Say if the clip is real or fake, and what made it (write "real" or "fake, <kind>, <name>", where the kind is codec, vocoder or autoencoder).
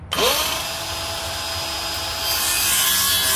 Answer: real